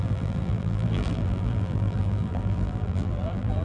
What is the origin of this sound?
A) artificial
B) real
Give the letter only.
A